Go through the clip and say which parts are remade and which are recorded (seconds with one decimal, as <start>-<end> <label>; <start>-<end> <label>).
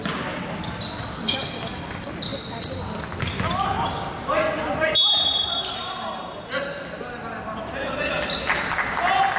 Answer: 0.0-9.4 recorded